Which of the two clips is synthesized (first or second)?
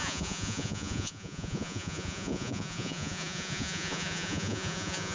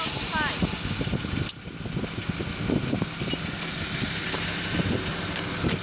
first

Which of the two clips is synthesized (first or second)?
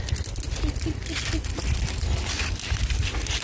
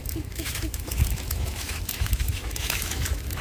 second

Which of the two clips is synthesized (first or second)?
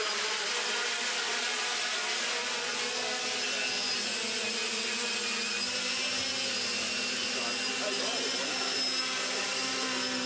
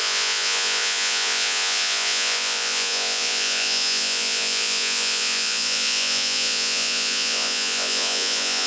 second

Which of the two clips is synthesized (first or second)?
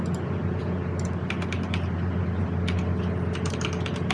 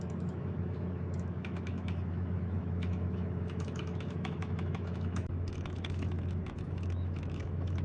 second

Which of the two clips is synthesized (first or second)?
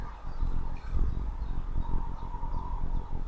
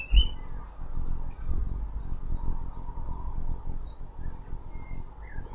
first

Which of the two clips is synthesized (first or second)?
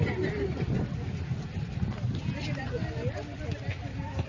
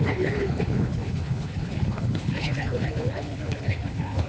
second